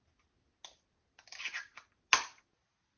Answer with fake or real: real